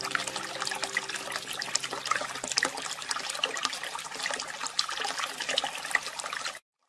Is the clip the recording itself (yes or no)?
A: yes